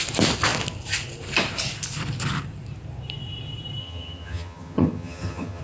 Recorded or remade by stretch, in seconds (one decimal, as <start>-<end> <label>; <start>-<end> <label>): 0.0-3.8 recorded; 3.8-5.6 remade